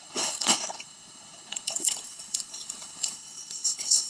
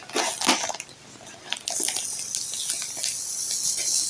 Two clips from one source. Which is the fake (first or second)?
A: first